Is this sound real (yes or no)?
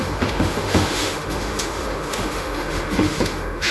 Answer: no